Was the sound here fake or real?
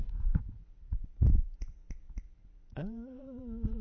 fake